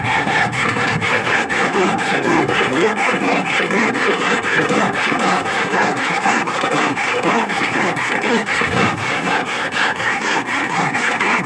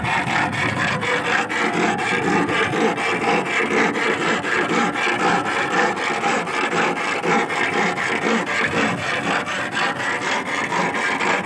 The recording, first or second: second